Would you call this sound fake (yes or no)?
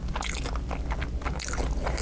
no